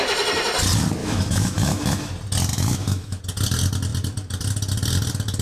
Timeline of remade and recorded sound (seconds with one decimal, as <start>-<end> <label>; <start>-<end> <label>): 0.0-1.0 recorded; 1.0-2.1 remade; 2.1-2.5 recorded; 2.5-3.2 remade; 3.2-5.4 recorded